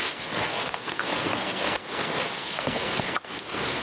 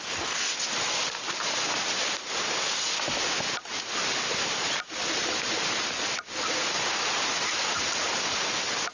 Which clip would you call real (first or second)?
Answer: second